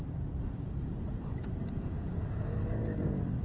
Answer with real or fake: fake